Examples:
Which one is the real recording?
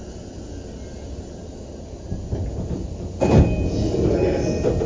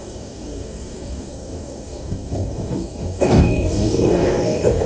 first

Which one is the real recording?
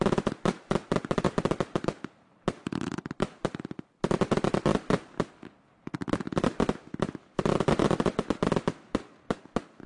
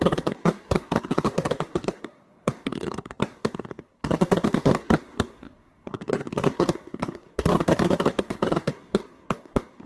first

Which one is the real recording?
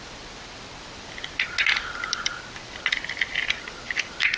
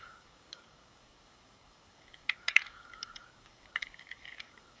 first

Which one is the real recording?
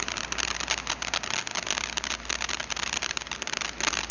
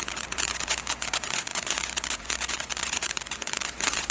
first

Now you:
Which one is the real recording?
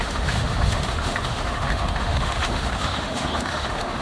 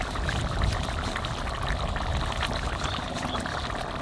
second